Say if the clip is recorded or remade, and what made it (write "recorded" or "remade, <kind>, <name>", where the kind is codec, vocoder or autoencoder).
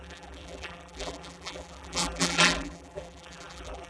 remade, vocoder, BigVGAN v2